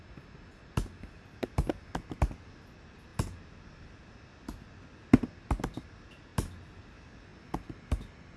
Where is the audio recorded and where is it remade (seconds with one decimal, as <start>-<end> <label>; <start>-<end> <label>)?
0.0-8.4 recorded